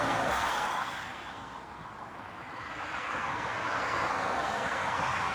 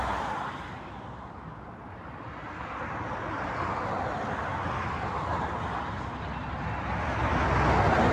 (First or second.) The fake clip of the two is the first